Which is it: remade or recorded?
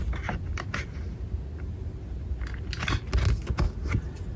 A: recorded